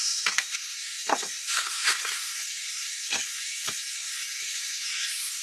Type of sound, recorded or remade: remade